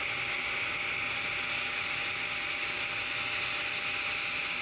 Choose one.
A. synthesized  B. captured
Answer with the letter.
B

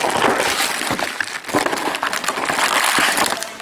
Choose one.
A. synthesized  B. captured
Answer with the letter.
B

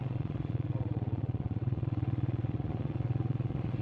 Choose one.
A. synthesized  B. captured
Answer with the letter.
A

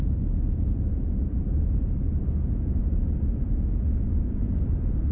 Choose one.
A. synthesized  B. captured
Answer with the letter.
A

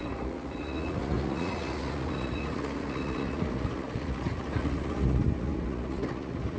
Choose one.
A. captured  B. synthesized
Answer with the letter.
B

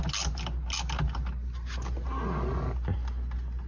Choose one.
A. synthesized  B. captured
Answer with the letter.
B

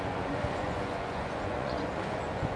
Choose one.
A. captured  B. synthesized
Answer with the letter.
B